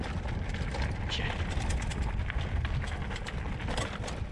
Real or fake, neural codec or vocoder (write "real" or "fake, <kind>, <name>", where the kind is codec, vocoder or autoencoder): real